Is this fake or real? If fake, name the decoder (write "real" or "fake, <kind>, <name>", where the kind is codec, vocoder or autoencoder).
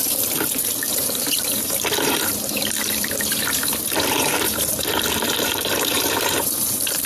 fake, vocoder, BigVGAN v2